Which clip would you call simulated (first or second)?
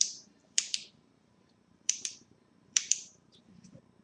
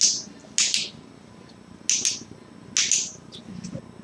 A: first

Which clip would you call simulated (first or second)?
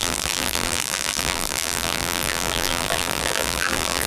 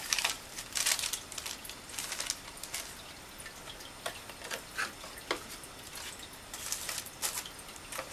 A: first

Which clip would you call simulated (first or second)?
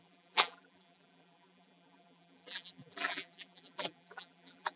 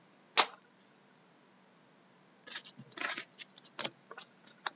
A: first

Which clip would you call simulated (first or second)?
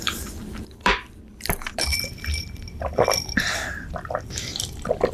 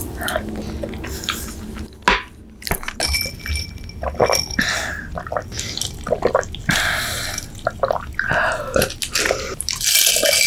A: first